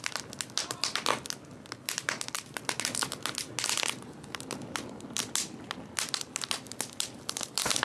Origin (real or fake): real